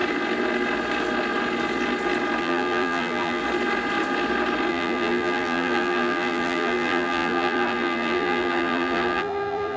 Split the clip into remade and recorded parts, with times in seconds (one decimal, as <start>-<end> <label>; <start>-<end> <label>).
0.0-2.4 recorded; 2.4-3.4 remade; 3.4-4.7 recorded; 4.7-9.8 remade